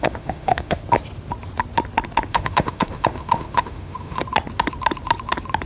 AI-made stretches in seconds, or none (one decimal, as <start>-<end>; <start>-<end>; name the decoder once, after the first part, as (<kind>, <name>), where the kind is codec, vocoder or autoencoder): 0.0-0.8 (autoencoder, DAC-VAE); 2.3-4.2